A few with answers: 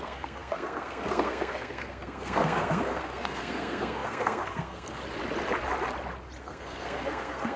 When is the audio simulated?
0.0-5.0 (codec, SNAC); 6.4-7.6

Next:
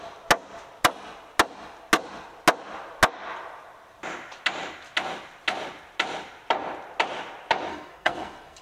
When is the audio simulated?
7.7-8.6 (codec, SNAC)

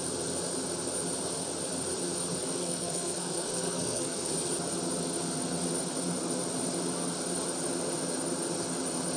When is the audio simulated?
2.6-4.3 (codec, SNAC)

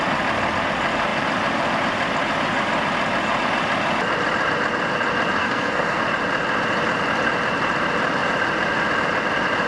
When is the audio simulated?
5.4-6.0 (codec, SNAC)

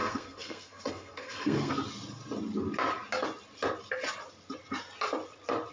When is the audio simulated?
0.0-1.7 (codec, SNAC)

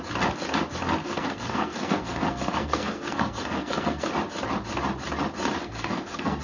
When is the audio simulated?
1.0-4.1 (codec, SNAC); 5.6-6.4

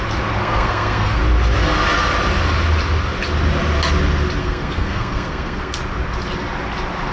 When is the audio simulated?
0.4-1.2 (codec, SNAC); 4.4-5.8

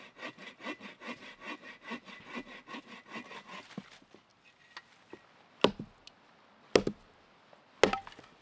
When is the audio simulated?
none